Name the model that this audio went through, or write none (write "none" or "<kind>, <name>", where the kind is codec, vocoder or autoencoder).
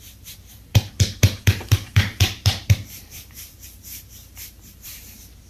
vocoder, BigVGAN v2